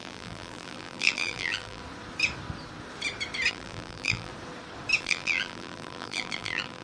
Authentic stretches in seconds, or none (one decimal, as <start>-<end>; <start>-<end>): 1.8-3.5; 4.3-5.0